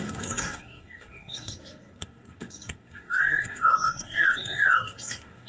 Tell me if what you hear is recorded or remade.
remade